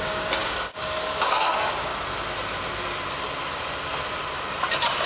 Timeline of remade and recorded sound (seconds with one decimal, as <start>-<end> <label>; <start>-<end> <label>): 0.0-1.9 remade; 1.9-5.1 recorded